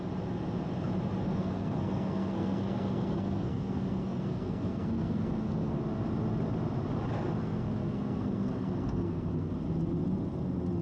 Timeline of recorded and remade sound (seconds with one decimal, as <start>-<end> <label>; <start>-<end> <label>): 0.0-1.2 recorded; 1.2-5.8 remade; 5.8-7.4 recorded; 7.4-9.5 remade; 9.5-10.8 recorded